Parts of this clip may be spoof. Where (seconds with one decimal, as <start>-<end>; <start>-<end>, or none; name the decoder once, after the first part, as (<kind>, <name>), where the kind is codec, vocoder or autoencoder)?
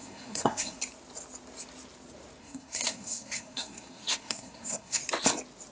0.0-0.8 (codec, SNAC); 2.4-5.0